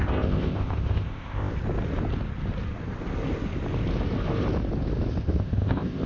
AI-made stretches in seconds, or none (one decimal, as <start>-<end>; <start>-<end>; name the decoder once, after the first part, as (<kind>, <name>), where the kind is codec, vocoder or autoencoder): 0.0-1.5 (codec, ZipCodec); 5.2-6.1